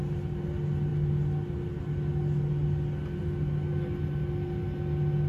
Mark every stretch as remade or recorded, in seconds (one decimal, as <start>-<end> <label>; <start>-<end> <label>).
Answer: 0.0-5.3 recorded